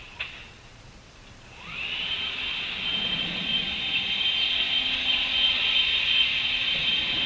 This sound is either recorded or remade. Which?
remade